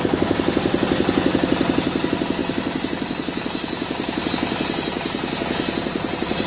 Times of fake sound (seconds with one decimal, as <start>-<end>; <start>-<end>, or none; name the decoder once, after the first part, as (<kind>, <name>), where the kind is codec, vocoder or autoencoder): none